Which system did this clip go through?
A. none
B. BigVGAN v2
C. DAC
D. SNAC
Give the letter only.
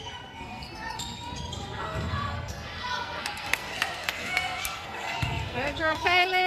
D